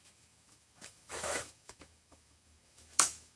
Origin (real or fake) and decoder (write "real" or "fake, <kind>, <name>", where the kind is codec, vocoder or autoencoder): fake, autoencoder, DAC-VAE